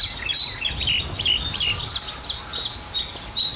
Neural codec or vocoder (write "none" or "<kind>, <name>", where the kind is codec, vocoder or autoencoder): none